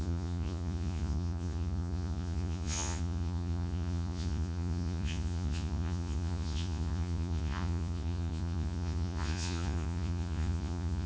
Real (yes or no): no